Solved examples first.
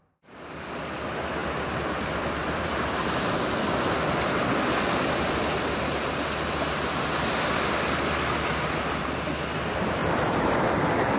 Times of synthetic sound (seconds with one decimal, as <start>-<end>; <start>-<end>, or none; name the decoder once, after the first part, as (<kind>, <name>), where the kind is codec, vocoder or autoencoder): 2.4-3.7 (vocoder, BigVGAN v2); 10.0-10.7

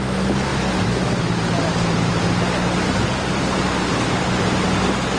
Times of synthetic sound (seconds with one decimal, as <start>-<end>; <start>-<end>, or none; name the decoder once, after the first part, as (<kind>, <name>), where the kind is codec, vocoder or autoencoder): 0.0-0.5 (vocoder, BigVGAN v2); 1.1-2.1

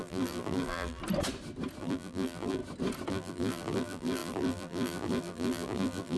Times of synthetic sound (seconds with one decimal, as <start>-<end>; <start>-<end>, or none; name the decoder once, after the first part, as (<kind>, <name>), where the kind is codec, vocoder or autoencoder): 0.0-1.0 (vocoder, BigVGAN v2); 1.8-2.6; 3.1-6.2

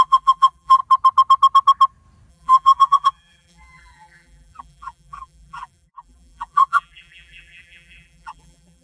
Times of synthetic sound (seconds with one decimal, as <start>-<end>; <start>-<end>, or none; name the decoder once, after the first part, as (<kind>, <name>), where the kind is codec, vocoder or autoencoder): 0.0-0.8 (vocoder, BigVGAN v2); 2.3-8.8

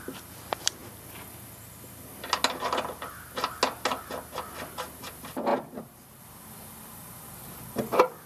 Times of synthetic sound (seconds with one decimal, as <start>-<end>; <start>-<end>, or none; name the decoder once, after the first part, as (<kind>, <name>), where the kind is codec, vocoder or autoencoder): 0.0-0.8 (vocoder, BigVGAN v2); 4.7-5.5; 6.2-8.3

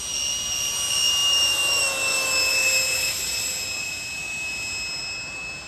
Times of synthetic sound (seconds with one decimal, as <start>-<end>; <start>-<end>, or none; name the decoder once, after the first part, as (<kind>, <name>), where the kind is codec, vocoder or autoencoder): 1.2-1.8 (vocoder, BigVGAN v2); 2.5-3.4

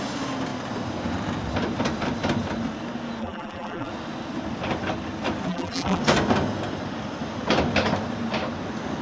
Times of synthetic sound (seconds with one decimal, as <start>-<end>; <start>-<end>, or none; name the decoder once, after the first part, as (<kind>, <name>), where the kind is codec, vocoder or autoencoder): 3.2-3.9 (vocoder, BigVGAN v2); 5.5-6.0

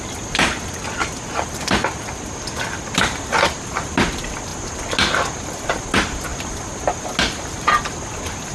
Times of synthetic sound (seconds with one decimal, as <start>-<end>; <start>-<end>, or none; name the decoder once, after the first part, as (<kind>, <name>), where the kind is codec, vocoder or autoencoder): none